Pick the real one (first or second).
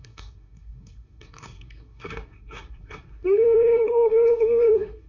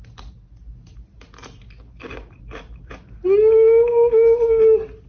second